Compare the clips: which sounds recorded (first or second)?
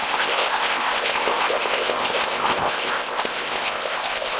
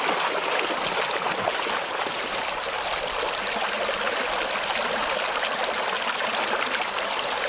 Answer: second